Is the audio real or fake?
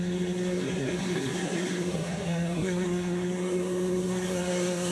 fake